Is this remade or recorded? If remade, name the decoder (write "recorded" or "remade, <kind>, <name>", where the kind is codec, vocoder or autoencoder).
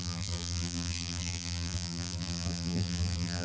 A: remade, vocoder, BigVGAN v2